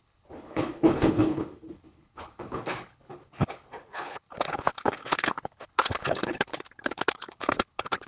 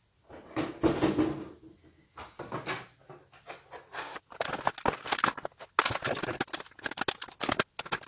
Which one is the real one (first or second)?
second